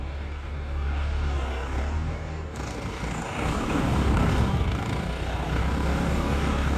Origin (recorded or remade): remade